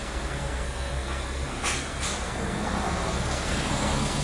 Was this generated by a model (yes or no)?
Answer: yes